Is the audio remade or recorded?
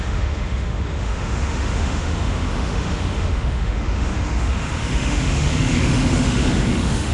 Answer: remade